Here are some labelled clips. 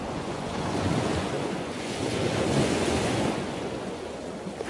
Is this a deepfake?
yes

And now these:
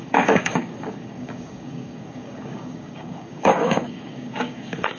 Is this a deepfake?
yes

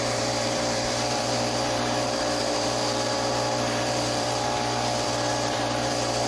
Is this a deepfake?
yes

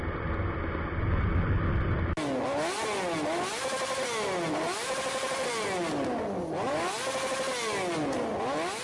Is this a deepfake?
no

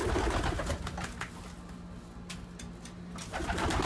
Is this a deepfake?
no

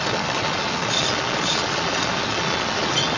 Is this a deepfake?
yes